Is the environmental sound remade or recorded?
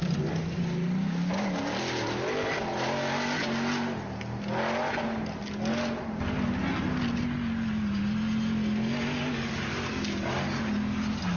recorded